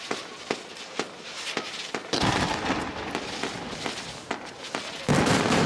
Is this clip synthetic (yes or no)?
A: no